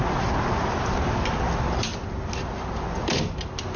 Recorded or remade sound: recorded